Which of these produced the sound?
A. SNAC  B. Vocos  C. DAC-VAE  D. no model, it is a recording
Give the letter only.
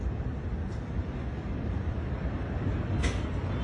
D